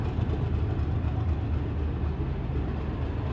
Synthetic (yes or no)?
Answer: no